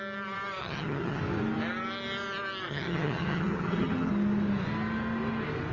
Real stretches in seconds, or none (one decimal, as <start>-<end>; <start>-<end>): 0.0-0.6; 1.2-2.7; 4.1-5.7